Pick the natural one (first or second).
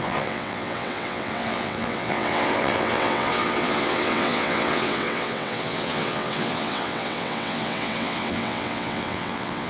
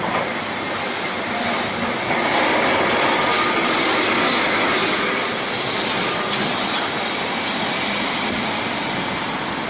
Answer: second